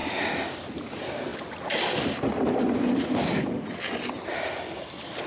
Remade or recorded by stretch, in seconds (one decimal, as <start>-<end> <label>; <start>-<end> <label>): 0.0-0.7 remade; 0.7-5.3 recorded